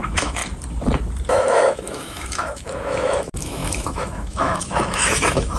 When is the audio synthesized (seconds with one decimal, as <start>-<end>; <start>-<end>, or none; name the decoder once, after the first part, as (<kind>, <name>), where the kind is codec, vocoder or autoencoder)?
0.0-0.4 (autoencoder, DAC-VAE); 1.3-5.6